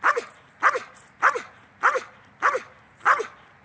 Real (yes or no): yes